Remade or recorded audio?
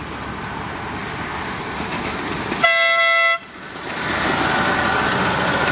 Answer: recorded